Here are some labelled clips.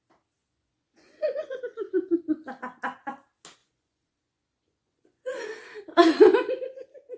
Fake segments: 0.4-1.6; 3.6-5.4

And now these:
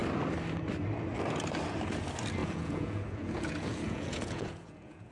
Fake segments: 2.4-5.1

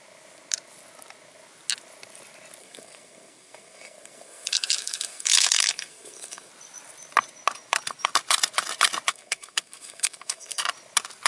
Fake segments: 2.6-6.5; 9.1-10.6

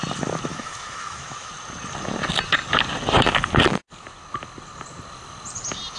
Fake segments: 0.5-1.5

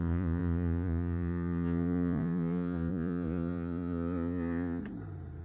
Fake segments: 0.0-4.8